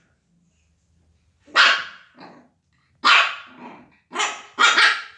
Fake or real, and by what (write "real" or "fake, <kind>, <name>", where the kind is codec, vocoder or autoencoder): real